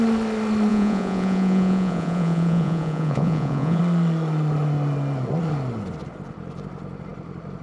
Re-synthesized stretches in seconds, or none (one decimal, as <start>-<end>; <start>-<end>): 0.7-3.8